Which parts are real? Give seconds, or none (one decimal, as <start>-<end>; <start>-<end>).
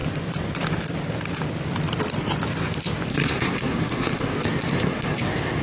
0.0-3.1; 4.3-4.7